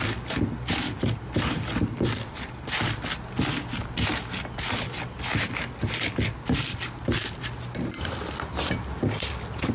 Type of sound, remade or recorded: recorded